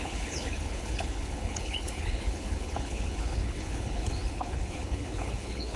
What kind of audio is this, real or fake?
fake